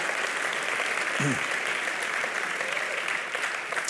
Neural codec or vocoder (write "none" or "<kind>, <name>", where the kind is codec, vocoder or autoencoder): none